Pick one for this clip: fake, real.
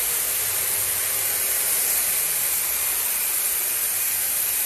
fake